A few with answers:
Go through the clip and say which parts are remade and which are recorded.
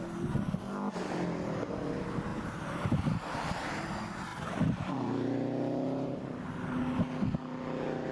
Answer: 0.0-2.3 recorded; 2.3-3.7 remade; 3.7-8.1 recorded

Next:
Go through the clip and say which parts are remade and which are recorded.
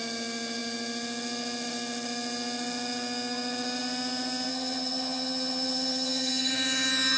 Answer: 0.0-4.5 recorded; 4.5-6.5 remade; 6.5-7.2 recorded